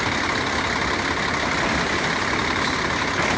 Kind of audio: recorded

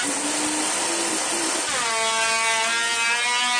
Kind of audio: recorded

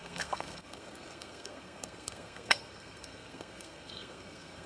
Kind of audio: remade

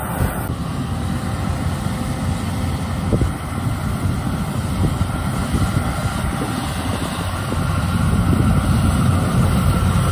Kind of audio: recorded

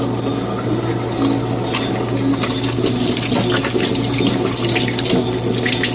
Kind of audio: recorded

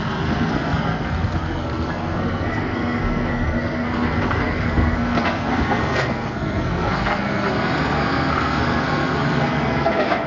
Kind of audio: remade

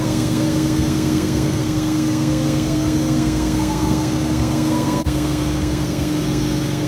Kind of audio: remade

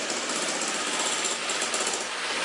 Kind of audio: recorded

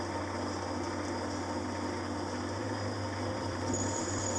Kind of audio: recorded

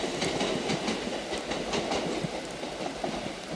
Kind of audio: recorded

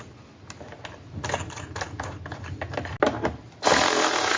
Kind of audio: recorded